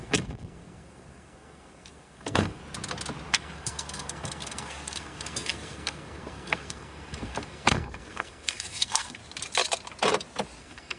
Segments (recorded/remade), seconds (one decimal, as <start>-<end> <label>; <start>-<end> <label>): 0.0-2.6 remade; 2.6-3.3 recorded; 3.3-9.2 remade; 9.2-10.6 recorded; 10.6-11.0 remade